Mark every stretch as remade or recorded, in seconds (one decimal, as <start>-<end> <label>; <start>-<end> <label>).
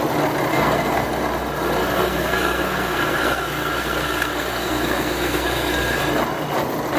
0.0-0.5 recorded; 0.5-1.1 remade; 1.1-1.8 recorded; 1.8-6.0 remade; 6.0-7.0 recorded